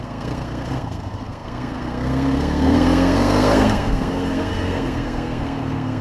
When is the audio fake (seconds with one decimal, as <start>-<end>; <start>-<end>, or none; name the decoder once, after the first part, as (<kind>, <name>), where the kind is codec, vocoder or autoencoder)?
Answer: 0.0-6.0 (codec, SNAC)